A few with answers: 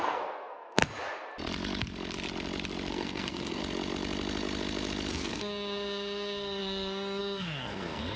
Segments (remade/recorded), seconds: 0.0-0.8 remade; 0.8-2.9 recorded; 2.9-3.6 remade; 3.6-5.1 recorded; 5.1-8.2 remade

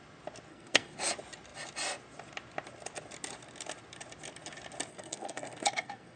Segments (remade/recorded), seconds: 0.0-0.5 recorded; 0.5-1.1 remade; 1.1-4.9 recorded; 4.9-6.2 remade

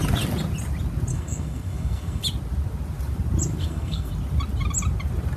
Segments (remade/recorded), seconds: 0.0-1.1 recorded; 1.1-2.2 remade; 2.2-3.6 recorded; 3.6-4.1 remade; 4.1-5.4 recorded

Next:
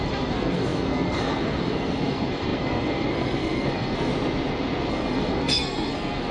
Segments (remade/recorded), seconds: 0.0-4.1 remade; 4.1-4.9 recorded; 4.9-6.3 remade

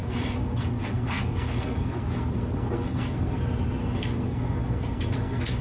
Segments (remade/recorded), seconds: 0.0-3.4 remade; 3.4-3.8 recorded; 3.8-5.6 remade

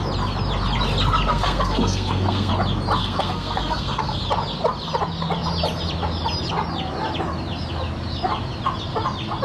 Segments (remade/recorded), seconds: 0.0-1.3 recorded; 1.3-2.5 remade; 2.5-3.0 recorded; 3.0-4.2 remade; 4.2-9.4 recorded

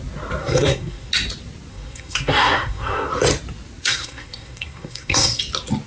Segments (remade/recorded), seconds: 0.0-0.4 recorded; 0.4-1.1 remade; 1.1-1.7 recorded; 1.7-3.1 remade; 3.1-3.8 recorded; 3.8-5.4 remade; 5.4-5.9 recorded

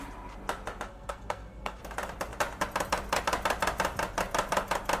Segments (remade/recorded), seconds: 0.0-0.9 recorded; 0.9-1.8 remade; 1.8-5.0 recorded